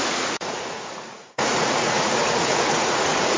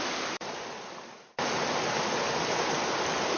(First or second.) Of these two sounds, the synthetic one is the first